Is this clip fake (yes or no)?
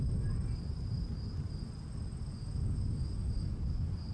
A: no